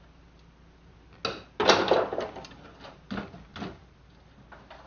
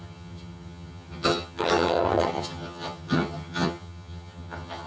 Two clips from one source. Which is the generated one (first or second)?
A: second